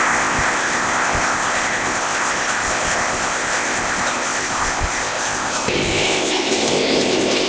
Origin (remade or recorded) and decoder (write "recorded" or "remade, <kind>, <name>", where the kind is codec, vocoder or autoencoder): remade, codec, ZipCodec